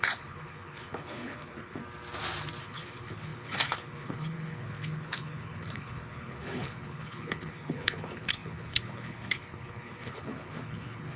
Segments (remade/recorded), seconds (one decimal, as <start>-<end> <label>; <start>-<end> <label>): 0.0-1.8 remade; 1.8-2.6 recorded; 2.6-11.2 remade